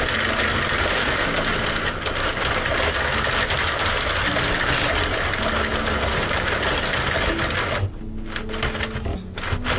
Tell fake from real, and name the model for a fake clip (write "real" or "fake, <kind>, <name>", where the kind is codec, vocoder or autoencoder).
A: real